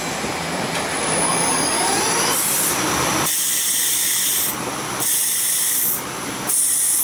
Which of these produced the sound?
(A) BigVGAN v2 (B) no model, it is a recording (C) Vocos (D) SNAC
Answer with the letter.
B